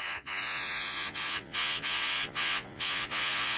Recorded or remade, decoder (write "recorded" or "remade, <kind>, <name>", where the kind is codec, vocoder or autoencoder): remade, vocoder, Vocos